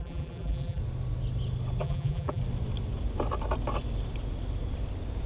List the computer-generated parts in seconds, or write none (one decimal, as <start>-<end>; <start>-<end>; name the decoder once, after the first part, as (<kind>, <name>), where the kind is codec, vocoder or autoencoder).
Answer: 0.0-0.8 (vocoder, BigVGAN v2); 1.8-2.4